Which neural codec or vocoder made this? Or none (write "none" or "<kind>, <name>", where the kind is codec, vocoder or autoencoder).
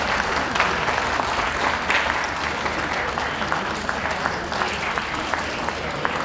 none